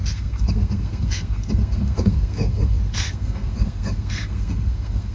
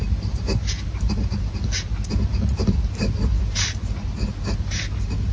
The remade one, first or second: first